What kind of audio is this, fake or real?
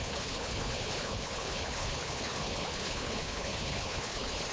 fake